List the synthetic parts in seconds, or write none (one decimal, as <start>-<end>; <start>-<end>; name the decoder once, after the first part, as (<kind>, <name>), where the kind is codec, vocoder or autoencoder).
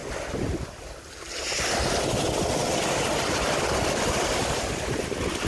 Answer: none